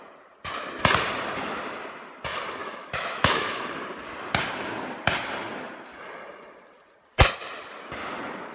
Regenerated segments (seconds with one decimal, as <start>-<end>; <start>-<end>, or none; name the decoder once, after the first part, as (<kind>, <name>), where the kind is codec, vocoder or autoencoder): 2.6-3.6 (autoencoder, DAC-VAE)